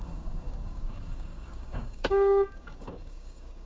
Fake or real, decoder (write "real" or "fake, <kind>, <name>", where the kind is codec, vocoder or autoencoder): fake, codec, DAC